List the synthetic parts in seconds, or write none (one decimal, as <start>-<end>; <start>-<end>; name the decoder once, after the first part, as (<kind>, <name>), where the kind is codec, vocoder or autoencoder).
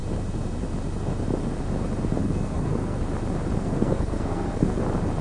2.2-3.0 (codec, SNAC); 3.6-4.8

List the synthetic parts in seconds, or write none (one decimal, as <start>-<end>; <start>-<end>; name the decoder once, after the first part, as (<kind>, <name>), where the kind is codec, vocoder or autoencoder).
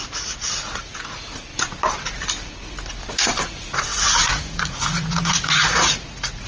0.0-1.5 (vocoder, Vocos); 3.1-6.5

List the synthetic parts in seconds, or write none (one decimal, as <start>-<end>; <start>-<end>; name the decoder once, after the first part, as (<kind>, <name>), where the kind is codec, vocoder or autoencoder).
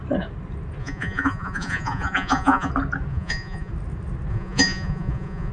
0.8-2.7 (vocoder, Vocos); 3.1-3.7; 4.3-5.5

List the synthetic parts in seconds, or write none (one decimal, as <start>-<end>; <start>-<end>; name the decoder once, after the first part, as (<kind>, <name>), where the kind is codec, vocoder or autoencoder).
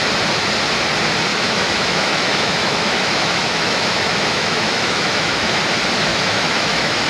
1.3-5.6 (autoencoder, DAC-VAE); 6.1-7.1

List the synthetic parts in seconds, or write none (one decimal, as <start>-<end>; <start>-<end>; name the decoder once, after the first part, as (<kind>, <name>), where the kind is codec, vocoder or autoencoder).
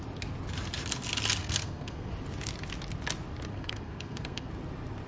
1.4-2.1 (codec, SNAC); 3.5-4.5